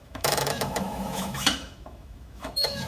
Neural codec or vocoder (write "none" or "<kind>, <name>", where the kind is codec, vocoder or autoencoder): autoencoder, DAC-VAE